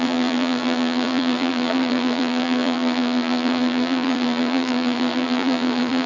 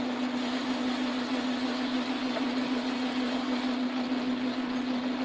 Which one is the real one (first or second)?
second